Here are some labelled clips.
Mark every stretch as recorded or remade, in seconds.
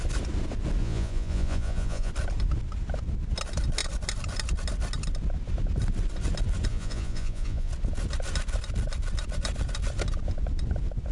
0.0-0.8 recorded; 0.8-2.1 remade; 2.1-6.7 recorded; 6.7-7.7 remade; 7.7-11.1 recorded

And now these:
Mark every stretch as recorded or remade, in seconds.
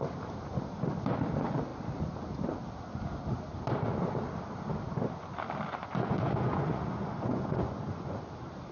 0.0-5.8 recorded; 5.8-8.2 remade; 8.2-8.7 recorded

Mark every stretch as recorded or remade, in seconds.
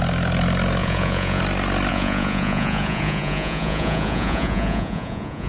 0.0-0.8 recorded; 0.8-1.4 remade; 1.4-1.9 recorded; 1.9-5.5 remade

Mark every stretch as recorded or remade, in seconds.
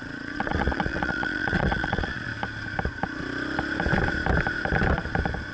0.0-2.3 remade; 2.3-5.5 recorded